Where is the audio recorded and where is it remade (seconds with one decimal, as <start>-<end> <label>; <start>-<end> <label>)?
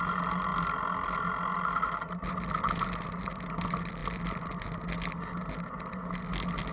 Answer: 0.0-6.7 recorded